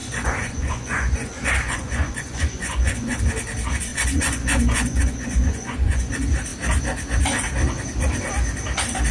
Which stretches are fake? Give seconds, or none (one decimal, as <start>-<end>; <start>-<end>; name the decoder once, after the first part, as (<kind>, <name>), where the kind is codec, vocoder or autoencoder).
0.0-3.2 (vocoder, Vocos); 3.9-6.1